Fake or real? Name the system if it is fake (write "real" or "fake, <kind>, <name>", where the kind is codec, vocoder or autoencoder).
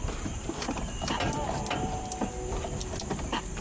fake, vocoder, BigVGAN v2